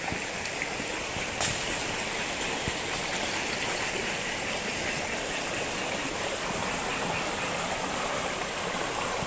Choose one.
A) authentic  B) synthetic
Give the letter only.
A